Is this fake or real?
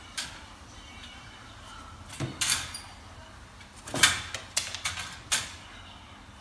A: real